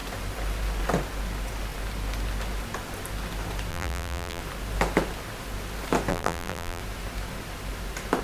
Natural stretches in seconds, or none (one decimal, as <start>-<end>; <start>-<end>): 0.0-3.7; 4.4-6.1; 6.8-8.2